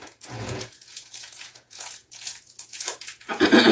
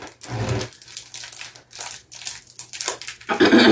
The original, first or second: second